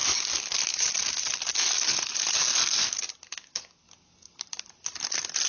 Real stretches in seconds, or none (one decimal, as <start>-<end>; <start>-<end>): 0.0-5.5